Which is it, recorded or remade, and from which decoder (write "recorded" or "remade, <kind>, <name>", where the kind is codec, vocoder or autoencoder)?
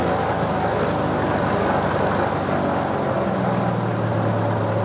recorded